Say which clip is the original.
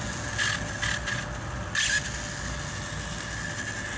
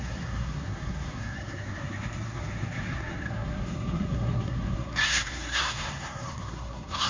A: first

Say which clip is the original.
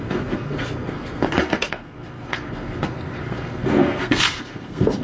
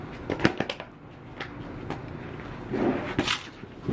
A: second